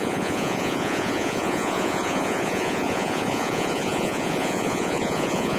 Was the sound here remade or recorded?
remade